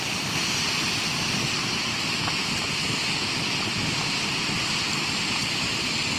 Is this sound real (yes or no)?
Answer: no